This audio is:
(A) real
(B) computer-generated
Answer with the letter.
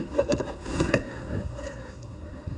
B